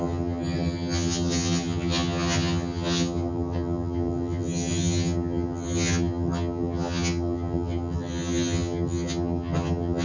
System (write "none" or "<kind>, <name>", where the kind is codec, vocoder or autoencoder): vocoder, HiFi-GAN